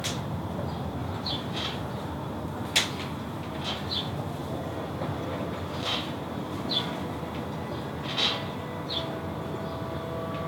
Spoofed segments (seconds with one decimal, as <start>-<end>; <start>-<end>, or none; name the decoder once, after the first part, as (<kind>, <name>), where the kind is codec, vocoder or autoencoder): 1.0-1.8 (vocoder, BigVGAN v2); 4.4-6.7